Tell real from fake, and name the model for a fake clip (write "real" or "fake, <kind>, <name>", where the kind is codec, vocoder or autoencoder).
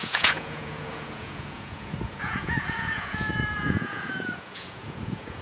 fake, vocoder, Vocos